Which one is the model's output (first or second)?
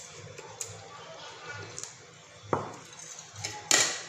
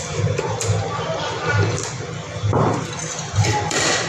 second